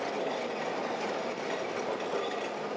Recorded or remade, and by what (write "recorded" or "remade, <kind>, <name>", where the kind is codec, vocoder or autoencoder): recorded